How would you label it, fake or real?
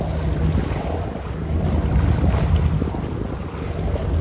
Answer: real